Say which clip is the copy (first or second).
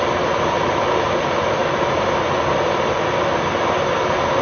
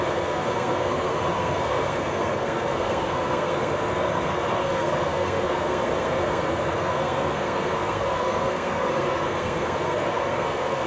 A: second